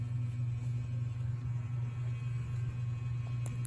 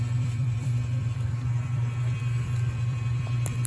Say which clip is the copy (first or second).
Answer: second